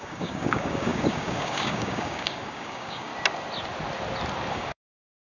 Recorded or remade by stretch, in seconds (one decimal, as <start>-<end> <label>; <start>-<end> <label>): 0.0-3.1 remade; 3.1-4.5 recorded; 4.5-5.4 remade